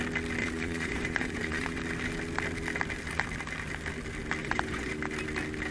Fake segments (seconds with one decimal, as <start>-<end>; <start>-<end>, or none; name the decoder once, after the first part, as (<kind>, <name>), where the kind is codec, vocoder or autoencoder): 0.4-1.8 (vocoder, Vocos); 4.4-4.9